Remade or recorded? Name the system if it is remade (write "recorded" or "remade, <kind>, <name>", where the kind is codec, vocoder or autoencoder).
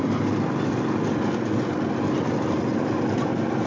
recorded